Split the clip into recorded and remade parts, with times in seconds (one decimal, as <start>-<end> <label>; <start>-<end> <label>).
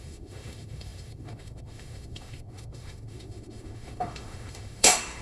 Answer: 0.0-5.2 remade